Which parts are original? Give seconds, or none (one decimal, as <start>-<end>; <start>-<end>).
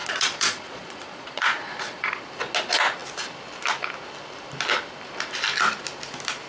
2.2-6.5